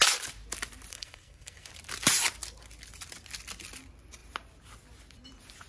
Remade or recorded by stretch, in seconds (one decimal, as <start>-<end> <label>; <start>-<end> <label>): 0.0-0.9 recorded; 0.9-1.7 remade; 1.7-5.7 recorded